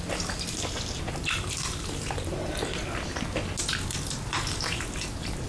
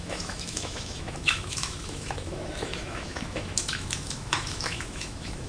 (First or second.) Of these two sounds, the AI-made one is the second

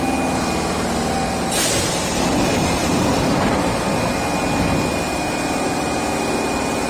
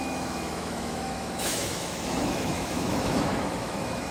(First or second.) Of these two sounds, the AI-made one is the second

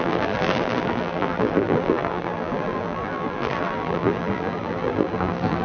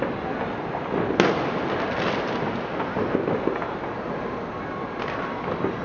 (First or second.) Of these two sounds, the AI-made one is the first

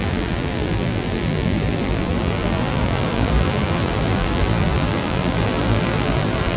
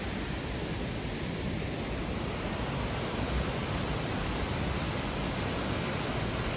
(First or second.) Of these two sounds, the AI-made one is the first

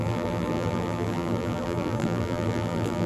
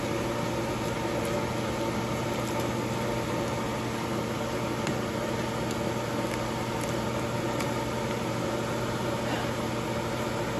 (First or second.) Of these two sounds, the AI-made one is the first